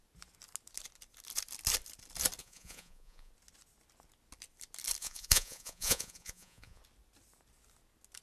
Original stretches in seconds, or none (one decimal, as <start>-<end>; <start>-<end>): 0.0-2.4; 3.3-5.0; 6.8-8.2